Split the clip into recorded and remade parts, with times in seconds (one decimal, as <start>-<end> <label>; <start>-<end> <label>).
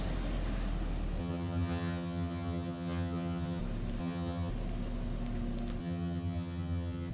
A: 0.0-1.2 recorded; 1.2-3.6 remade; 3.6-4.0 recorded; 4.0-4.5 remade; 4.5-5.8 recorded; 5.8-7.1 remade